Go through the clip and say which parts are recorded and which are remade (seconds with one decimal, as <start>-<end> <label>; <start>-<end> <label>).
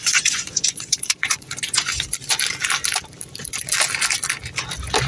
0.0-1.9 remade; 1.9-5.1 recorded